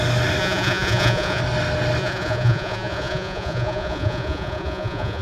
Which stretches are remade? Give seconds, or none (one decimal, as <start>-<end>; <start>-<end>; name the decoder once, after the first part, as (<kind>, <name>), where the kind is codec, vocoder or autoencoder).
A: 0.4-1.4 (vocoder, Vocos); 2.0-5.2